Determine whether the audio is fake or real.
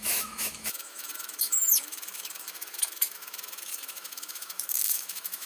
fake